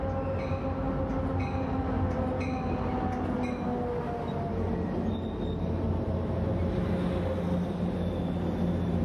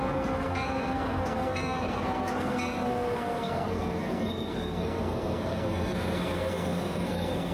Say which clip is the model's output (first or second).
second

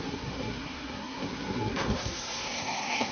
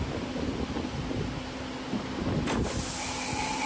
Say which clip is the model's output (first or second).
first